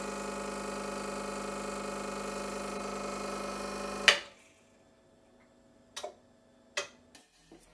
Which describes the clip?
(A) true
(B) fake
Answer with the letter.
A